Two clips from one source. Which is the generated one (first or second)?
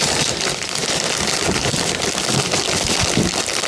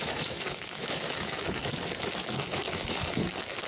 second